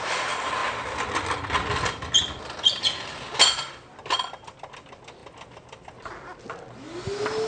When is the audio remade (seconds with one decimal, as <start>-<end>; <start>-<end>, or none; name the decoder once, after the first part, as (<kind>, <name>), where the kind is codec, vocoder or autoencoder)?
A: none